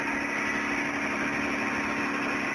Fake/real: real